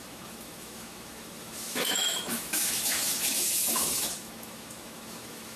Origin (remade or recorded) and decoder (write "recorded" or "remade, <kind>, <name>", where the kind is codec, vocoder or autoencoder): remade, autoencoder, DAC-VAE